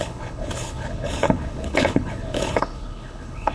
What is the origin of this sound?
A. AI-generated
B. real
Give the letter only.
A